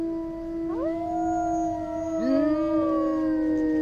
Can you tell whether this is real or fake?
real